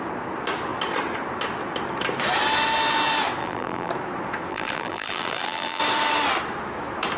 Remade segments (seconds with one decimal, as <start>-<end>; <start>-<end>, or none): 3.4-3.9; 4.5-5.8